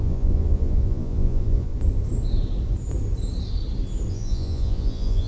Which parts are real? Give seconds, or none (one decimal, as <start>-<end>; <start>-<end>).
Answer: 1.7-4.1